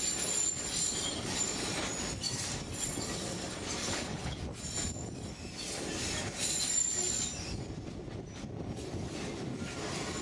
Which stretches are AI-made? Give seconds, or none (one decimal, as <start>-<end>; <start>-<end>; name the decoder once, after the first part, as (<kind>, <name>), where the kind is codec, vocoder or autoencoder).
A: 3.8-4.4 (codec, HILCodec)